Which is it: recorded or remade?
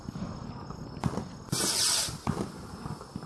recorded